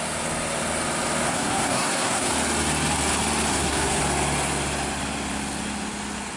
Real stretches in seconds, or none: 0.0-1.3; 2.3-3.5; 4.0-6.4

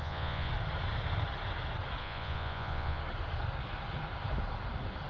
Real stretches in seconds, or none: 0.5-2.0; 3.0-5.1

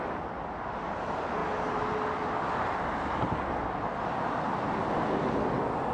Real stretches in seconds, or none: 0.0-5.9

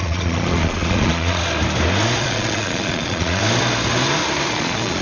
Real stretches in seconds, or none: 1.4-2.2; 3.4-4.5

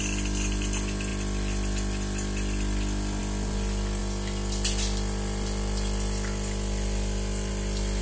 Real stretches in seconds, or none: 0.0-8.0